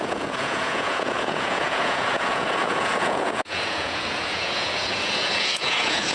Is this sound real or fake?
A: fake